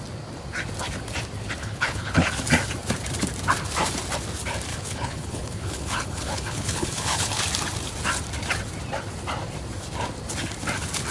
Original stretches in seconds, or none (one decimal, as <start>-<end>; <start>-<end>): 0.0-1.6; 2.3-4.7; 7.4-11.1